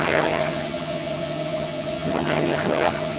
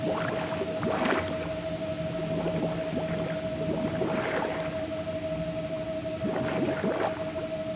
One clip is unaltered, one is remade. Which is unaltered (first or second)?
second